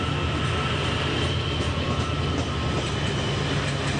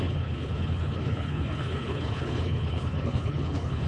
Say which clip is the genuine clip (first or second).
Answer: first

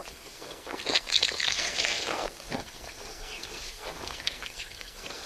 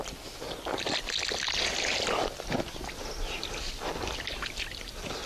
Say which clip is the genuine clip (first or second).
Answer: second